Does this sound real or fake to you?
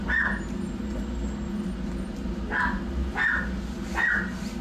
real